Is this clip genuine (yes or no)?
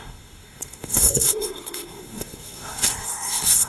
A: no